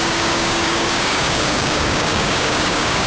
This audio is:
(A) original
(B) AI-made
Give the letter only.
B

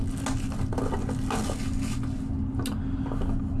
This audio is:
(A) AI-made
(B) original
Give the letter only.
B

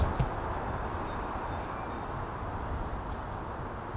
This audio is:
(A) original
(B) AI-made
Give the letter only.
A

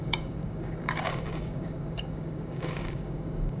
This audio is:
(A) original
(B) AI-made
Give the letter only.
B